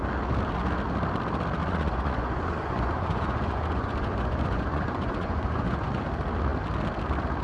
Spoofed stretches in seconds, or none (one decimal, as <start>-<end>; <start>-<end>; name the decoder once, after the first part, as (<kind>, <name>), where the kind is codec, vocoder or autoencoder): 1.6-6.0 (vocoder, Vocos)